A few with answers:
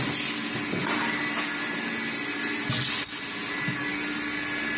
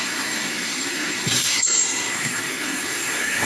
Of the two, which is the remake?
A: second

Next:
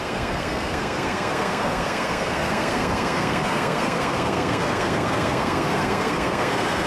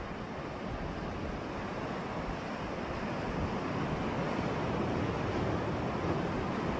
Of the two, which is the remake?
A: first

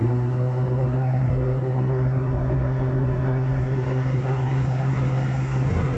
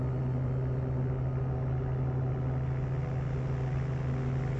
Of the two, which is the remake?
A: first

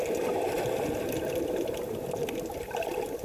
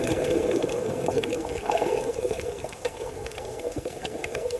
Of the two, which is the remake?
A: second